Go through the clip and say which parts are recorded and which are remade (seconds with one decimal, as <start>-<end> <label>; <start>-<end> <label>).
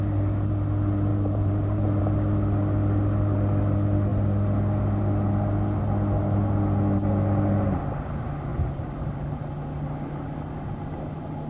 0.0-1.1 recorded; 1.1-2.0 remade; 2.0-8.5 recorded; 8.5-9.4 remade; 9.4-11.5 recorded